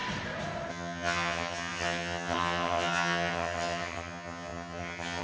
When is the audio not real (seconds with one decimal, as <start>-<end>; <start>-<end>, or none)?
0.7-5.2

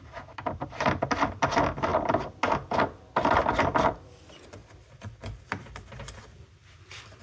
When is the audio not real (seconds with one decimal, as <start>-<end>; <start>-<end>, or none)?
none

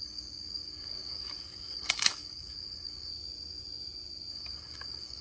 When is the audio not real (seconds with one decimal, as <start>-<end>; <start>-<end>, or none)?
0.0-3.1; 4.3-5.2

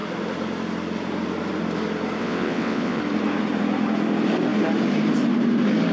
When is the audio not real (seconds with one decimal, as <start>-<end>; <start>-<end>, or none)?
2.2-3.0

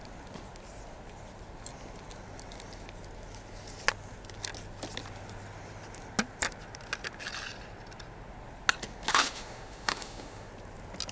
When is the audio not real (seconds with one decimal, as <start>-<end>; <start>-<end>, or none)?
9.1-10.5

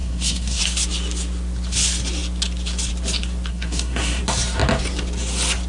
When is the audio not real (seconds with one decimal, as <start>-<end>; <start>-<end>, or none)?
0.0-0.6; 3.5-4.2

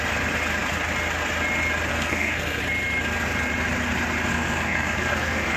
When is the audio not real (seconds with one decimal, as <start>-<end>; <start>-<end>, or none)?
1.9-2.6; 4.3-5.6

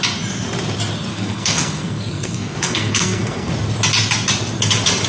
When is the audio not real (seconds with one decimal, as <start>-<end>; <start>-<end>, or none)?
1.1-3.5